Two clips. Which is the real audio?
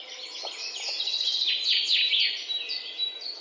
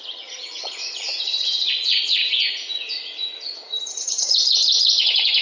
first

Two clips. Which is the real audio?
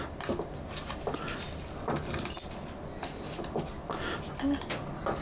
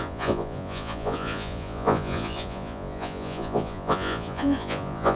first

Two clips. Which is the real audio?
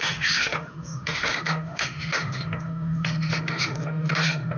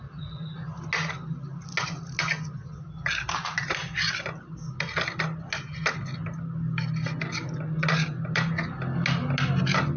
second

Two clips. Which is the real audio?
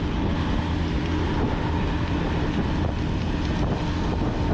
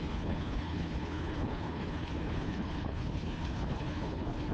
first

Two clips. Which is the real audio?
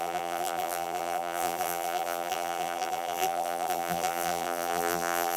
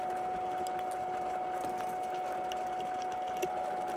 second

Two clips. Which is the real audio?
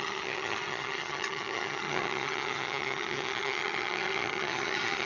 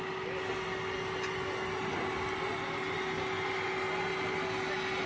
second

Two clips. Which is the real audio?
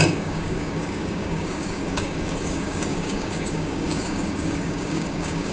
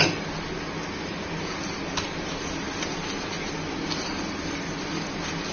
second